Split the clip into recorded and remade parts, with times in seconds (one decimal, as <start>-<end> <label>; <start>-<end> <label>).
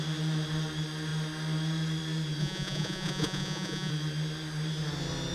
0.0-2.4 recorded; 2.4-3.9 remade; 3.9-5.3 recorded